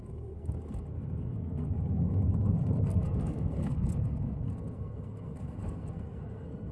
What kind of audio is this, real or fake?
fake